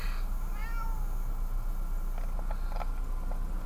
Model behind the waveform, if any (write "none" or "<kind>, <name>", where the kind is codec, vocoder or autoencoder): none